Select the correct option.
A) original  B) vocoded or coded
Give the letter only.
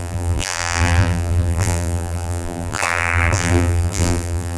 B